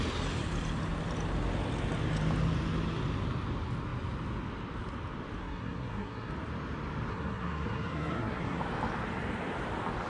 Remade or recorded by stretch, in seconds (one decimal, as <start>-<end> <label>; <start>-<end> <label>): 0.0-5.4 recorded; 5.4-6.3 remade; 6.3-7.1 recorded; 7.1-8.6 remade; 8.6-10.1 recorded